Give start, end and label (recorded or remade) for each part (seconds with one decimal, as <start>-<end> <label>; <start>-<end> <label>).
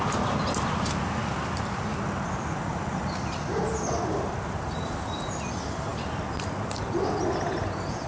0.0-8.1 recorded